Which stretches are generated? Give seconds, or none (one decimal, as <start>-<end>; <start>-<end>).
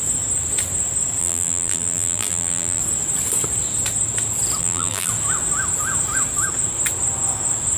1.2-2.8; 4.6-5.1